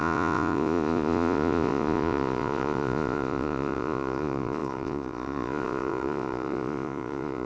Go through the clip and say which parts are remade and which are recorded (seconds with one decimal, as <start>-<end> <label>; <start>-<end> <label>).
0.0-7.5 remade